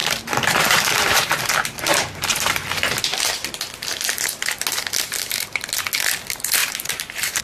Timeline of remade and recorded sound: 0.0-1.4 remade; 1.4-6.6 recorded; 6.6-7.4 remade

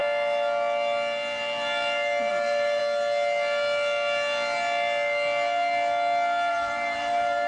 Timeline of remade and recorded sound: 0.0-2.3 recorded; 2.3-2.8 remade; 2.8-6.5 recorded; 6.5-7.5 remade

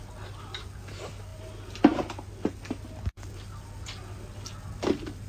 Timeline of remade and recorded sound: 0.0-5.3 recorded

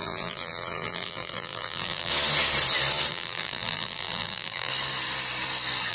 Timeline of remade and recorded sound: 0.0-2.1 remade; 2.1-3.1 recorded; 3.1-4.7 remade; 4.7-5.9 recorded

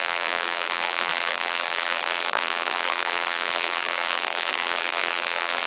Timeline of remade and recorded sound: 0.0-5.7 remade